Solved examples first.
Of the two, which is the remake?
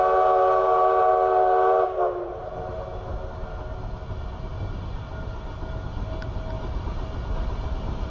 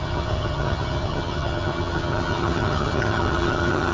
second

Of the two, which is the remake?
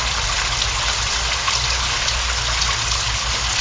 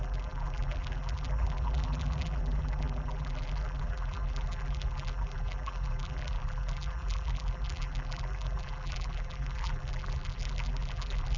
second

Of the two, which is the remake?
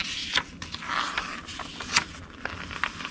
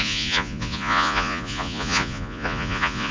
second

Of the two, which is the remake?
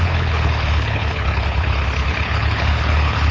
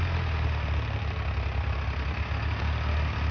first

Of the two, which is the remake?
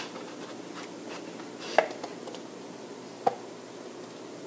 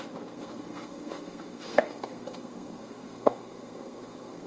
second